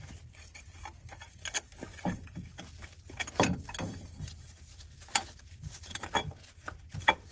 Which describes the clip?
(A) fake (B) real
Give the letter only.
B